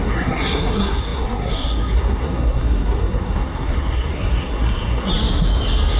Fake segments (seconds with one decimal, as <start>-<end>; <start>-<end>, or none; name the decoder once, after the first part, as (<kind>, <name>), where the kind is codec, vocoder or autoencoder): 0.0-5.1 (codec, SNAC)